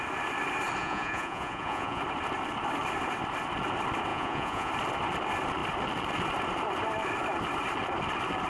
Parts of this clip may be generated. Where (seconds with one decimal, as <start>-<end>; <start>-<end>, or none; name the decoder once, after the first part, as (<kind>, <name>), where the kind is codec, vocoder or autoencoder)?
0.8-2.0 (vocoder, Vocos); 4.1-4.7